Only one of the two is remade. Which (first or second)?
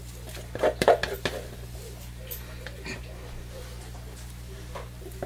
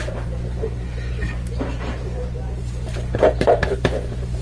second